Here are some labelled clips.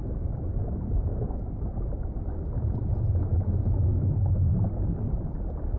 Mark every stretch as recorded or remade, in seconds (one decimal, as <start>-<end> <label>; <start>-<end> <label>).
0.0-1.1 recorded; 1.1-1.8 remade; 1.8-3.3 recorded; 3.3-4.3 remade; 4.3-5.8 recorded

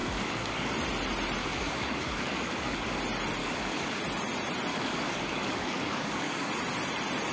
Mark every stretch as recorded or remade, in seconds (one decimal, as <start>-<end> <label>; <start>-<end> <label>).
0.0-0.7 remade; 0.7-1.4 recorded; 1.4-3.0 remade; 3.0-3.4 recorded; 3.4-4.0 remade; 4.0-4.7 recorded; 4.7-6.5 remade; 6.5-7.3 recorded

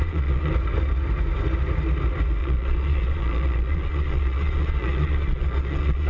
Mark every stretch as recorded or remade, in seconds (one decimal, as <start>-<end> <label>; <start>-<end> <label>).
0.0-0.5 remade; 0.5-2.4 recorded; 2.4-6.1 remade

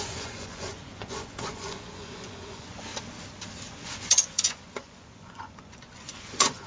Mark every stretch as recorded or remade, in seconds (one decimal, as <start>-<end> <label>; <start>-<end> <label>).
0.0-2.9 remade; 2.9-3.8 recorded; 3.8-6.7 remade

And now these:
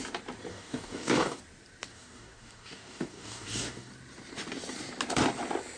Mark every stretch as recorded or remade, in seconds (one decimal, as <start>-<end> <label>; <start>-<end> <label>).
0.0-0.5 recorded; 0.5-1.4 remade; 1.4-1.9 recorded; 1.9-3.9 remade; 3.9-5.8 recorded

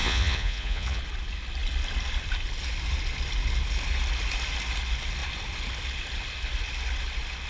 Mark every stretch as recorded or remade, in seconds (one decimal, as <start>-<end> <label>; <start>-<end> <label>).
0.0-1.0 remade; 1.0-7.5 recorded

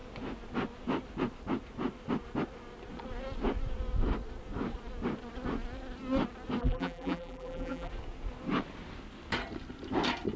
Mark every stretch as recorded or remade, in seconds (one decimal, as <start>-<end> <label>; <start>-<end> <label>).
0.0-6.6 recorded; 6.6-7.9 remade; 7.9-10.4 recorded